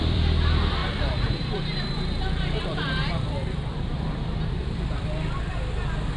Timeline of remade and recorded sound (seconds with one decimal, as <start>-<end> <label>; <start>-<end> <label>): 0.0-6.2 remade